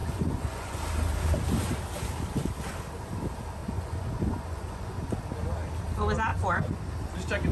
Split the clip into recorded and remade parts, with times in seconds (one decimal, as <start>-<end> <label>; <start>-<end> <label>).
0.0-0.8 remade; 0.8-3.6 recorded; 3.6-5.0 remade; 5.0-6.3 recorded; 6.3-6.8 remade; 6.8-7.5 recorded